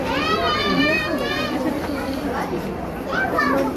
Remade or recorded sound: recorded